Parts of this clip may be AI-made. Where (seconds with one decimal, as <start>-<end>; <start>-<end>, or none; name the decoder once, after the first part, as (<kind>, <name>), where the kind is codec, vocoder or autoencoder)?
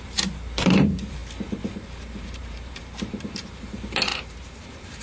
0.0-1.2 (vocoder, BigVGAN v2); 2.2-5.0